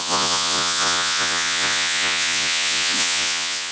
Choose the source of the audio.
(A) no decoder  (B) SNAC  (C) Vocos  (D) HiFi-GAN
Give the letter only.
C